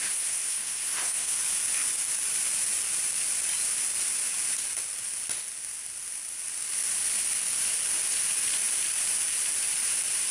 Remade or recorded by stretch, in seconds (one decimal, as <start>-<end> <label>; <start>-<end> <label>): 0.0-1.4 remade; 1.4-10.3 recorded